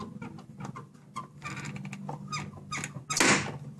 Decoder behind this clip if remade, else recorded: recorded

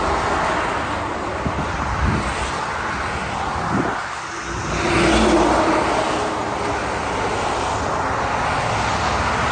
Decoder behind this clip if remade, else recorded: recorded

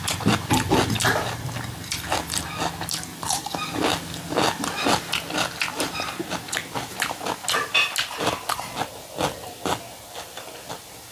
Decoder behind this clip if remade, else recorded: recorded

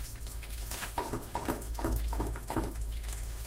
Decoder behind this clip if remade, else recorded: remade, autoencoder, DAC-VAE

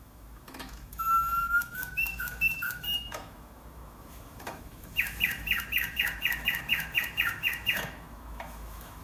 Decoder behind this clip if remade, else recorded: remade, autoencoder, DAC-VAE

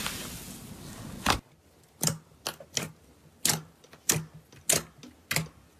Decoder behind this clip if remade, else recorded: recorded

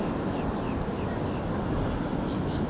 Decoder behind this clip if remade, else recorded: recorded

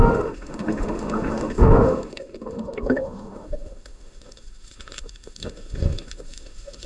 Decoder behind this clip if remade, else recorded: remade, autoencoder, DAC-VAE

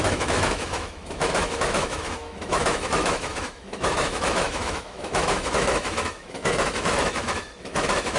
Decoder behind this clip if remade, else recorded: remade, autoencoder, DAC-VAE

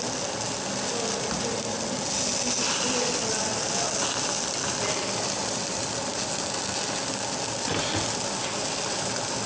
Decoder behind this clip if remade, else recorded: recorded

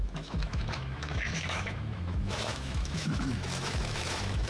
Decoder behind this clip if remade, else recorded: remade, autoencoder, DAC-VAE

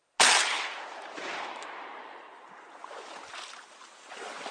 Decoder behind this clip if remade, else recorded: recorded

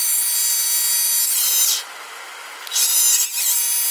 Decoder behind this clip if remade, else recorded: recorded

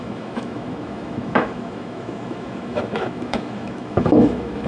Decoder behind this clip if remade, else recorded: remade, autoencoder, DAC-VAE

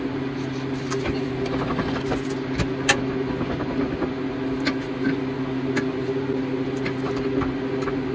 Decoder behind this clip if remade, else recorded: recorded